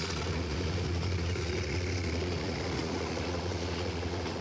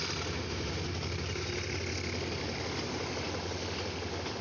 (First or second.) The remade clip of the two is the first